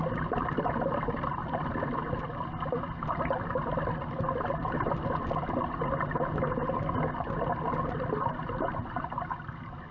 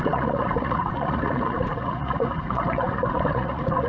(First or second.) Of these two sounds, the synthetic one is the second